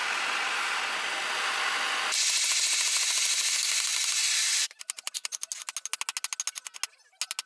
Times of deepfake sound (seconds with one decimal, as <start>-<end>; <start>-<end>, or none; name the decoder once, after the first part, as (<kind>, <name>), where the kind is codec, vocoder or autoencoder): none